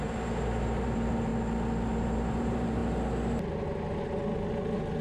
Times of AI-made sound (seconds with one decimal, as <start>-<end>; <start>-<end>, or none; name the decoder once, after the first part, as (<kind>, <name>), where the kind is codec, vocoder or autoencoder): 0.0-1.3 (vocoder, BigVGAN v2); 1.9-2.8